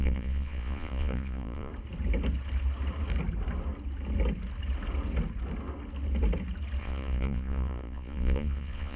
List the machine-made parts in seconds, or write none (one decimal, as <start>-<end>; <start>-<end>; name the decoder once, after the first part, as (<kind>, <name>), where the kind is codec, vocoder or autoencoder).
0.0-1.7 (vocoder, Vocos); 6.8-9.0